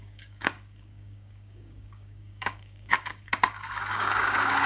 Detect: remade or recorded remade